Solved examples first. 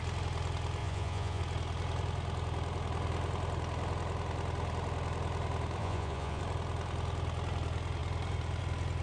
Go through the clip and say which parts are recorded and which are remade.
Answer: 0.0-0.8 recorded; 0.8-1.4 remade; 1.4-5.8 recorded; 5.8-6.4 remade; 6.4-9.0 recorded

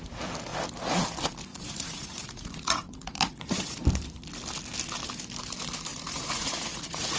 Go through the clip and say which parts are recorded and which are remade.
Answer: 0.0-1.5 recorded; 1.5-3.8 remade; 3.8-5.9 recorded; 5.9-7.2 remade

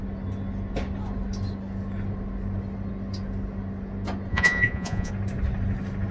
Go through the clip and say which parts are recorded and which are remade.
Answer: 0.0-4.3 recorded; 4.3-5.1 remade; 5.1-6.1 recorded

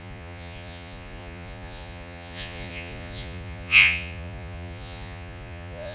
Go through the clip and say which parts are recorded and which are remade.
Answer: 0.0-5.9 remade

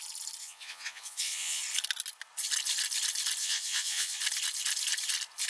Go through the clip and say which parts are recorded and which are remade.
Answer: 0.0-0.4 recorded; 0.4-1.6 remade; 1.6-3.4 recorded; 3.4-4.2 remade; 4.2-5.5 recorded

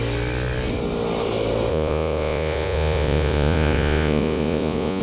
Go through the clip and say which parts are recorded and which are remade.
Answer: 0.0-1.7 recorded; 1.7-5.0 remade